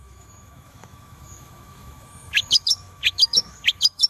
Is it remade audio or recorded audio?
remade